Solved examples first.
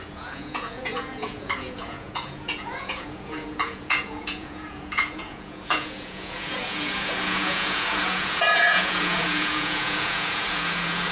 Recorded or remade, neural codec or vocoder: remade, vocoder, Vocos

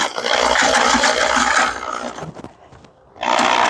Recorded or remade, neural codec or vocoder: recorded